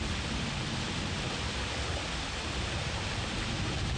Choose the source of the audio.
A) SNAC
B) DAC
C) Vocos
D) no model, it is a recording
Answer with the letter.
D